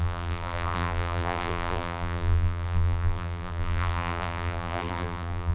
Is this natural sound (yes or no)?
no